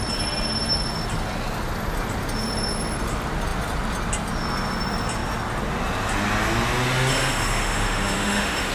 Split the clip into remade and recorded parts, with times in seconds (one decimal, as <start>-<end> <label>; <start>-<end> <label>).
0.0-7.1 recorded; 7.1-8.7 remade